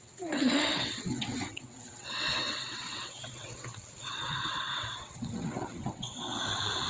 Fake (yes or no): yes